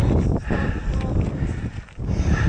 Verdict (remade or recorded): recorded